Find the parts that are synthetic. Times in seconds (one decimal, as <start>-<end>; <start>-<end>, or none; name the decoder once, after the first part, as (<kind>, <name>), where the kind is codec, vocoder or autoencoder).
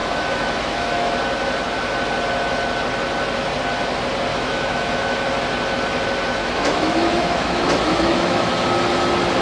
0.0-1.1 (autoencoder, DAC-VAE); 4.3-5.3; 6.4-8.5